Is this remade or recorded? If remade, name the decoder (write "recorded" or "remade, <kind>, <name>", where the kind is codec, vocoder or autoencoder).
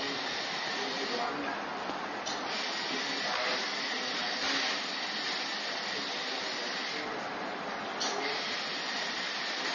recorded